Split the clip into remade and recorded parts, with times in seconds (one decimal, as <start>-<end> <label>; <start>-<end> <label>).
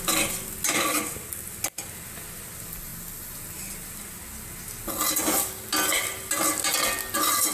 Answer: 0.0-7.5 recorded